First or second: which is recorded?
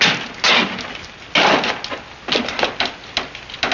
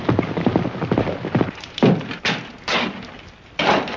first